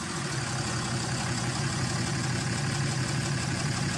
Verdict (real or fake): fake